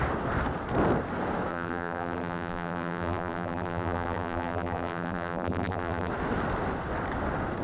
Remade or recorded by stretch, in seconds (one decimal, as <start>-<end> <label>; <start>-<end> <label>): 0.0-1.5 recorded; 1.5-6.1 remade; 6.1-7.6 recorded